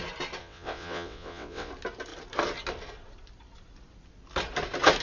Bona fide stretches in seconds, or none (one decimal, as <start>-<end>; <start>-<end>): 0.0-0.4; 1.7-5.0